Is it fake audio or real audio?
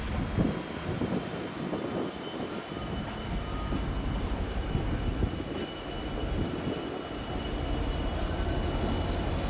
real